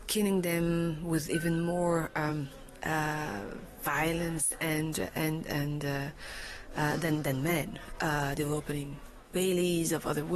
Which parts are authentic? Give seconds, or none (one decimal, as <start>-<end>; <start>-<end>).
0.7-2.3